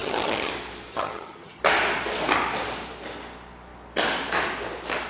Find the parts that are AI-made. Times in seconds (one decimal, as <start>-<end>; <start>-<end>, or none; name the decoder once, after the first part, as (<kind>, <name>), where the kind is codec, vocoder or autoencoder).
0.0-0.5 (vocoder, HiFi-GAN); 0.9-1.6

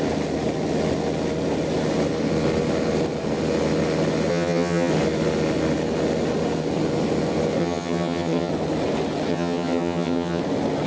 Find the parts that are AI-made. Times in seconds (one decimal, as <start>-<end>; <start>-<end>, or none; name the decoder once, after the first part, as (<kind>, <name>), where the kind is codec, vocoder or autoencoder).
4.3-4.9 (vocoder, HiFi-GAN); 7.6-8.5; 9.3-10.4

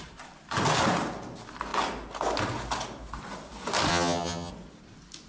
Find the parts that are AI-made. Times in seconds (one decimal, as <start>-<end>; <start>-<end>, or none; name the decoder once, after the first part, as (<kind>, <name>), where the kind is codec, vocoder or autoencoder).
3.9-4.5 (vocoder, HiFi-GAN)

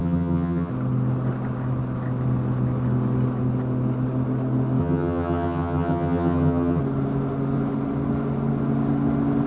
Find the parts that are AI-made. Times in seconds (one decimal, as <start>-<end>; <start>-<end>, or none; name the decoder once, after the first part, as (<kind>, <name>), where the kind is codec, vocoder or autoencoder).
0.0-0.7 (vocoder, HiFi-GAN); 4.8-6.8

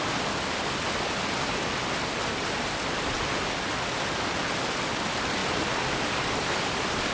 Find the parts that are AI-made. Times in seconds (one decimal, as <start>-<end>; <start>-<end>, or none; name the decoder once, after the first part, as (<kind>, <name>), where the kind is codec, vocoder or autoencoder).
none

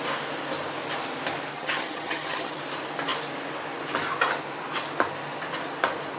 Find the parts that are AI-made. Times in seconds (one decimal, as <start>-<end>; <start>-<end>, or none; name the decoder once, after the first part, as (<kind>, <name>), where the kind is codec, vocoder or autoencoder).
1.5-2.6 (vocoder, HiFi-GAN)

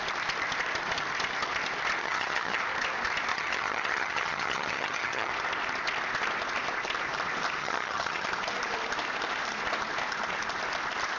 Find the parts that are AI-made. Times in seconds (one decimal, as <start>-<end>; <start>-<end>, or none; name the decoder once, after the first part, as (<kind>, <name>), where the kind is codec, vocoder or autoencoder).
2.0-2.6 (vocoder, HiFi-GAN); 3.3-5.3; 7.6-8.3